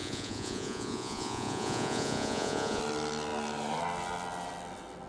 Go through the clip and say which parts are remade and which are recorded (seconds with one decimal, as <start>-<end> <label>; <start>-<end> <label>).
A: 0.0-2.8 remade; 2.8-5.1 recorded